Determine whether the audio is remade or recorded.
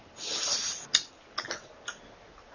recorded